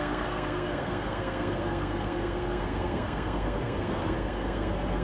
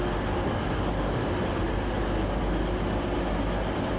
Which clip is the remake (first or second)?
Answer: first